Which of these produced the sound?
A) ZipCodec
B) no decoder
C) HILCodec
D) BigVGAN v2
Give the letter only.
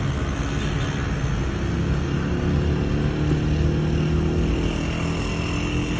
B